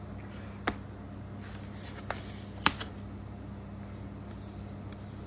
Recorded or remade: recorded